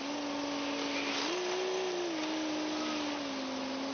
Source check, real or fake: real